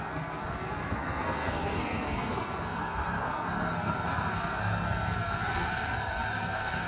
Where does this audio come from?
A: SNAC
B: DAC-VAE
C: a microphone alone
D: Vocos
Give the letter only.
A